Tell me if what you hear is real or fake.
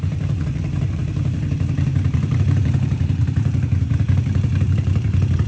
fake